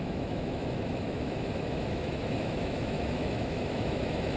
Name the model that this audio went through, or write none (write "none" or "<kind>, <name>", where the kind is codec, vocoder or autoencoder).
autoencoder, DAC-VAE